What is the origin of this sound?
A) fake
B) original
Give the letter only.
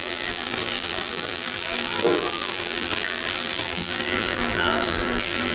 A